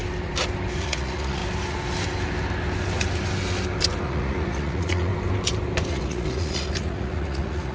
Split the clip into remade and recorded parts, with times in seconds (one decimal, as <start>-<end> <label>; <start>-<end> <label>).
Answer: 0.0-0.8 recorded; 0.8-1.4 remade; 1.4-4.0 recorded; 4.0-5.1 remade; 5.1-5.9 recorded; 5.9-7.7 remade